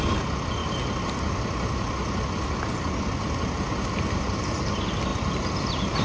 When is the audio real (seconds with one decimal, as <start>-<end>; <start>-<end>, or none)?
0.0-6.0